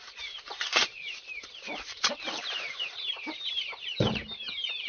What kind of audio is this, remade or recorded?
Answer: remade